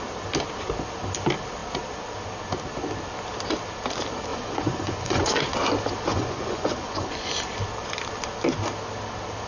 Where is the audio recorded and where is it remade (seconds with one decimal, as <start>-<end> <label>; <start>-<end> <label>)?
0.0-4.3 recorded; 4.3-5.4 remade; 5.4-6.1 recorded; 6.1-7.3 remade; 7.3-9.5 recorded

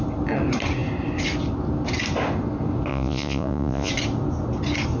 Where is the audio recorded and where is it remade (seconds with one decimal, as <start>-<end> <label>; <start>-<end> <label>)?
0.0-2.9 recorded; 2.9-3.9 remade; 3.9-5.0 recorded